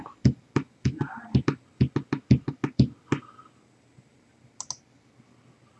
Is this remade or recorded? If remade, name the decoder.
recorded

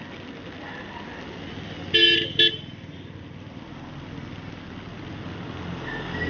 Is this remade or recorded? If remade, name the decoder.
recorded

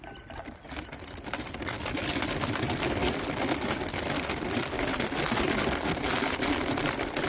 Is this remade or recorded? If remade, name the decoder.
recorded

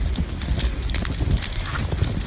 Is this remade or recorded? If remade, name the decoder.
recorded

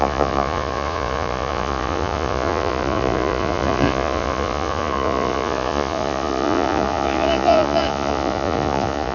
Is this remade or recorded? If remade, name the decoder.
remade, vocoder, Vocos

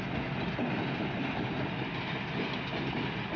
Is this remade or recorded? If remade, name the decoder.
recorded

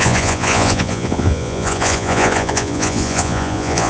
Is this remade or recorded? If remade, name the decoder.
remade, vocoder, Vocos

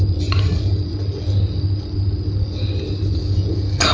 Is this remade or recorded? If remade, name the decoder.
recorded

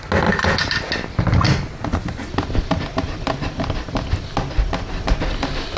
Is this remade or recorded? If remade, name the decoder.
recorded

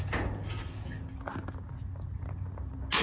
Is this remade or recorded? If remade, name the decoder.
recorded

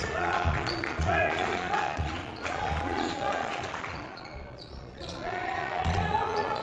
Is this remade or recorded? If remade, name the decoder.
remade, vocoder, Vocos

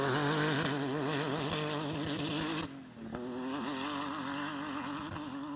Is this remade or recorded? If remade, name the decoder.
recorded